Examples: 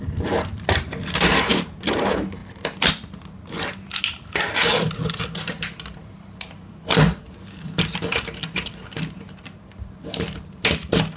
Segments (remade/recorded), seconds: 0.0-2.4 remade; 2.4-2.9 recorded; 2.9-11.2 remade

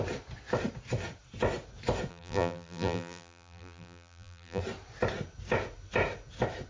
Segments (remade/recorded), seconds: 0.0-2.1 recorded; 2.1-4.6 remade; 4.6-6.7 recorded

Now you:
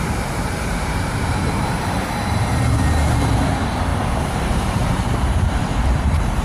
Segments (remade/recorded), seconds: 0.0-6.4 remade

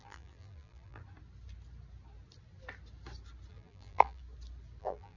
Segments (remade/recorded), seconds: 0.0-1.0 remade; 1.0-3.5 recorded; 3.5-4.2 remade; 4.2-4.8 recorded; 4.8-5.2 remade

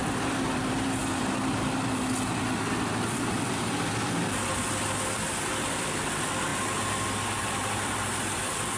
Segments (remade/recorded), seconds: 0.0-6.5 remade; 6.5-7.4 recorded; 7.4-8.8 remade

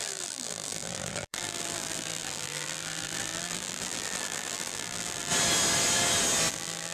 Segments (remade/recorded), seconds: 0.0-5.3 remade; 5.3-6.5 recorded; 6.5-6.9 remade

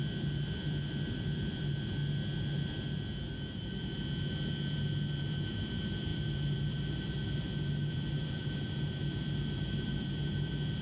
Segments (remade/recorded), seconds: 0.0-2.0 remade; 2.0-3.2 recorded; 3.2-3.9 remade; 3.9-5.2 recorded; 5.2-10.8 remade